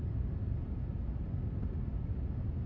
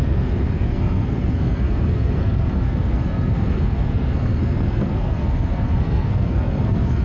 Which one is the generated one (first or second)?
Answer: second